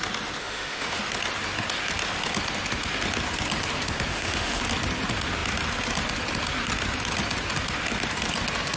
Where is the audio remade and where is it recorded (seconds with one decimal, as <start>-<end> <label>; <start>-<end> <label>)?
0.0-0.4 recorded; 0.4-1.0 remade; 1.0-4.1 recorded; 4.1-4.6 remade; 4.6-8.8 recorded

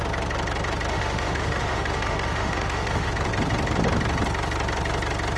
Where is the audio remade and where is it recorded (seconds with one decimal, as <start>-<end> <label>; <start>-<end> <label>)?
0.0-0.9 recorded; 0.9-3.1 remade; 3.1-5.4 recorded

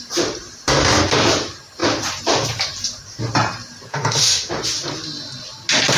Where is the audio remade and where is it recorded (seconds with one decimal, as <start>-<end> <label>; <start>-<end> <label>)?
0.0-3.9 recorded; 3.9-4.5 remade; 4.5-6.0 recorded